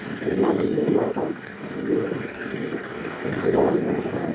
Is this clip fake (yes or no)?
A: yes